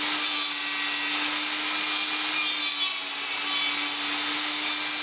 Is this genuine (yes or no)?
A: yes